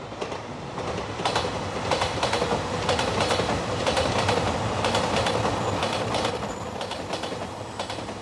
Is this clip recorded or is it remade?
recorded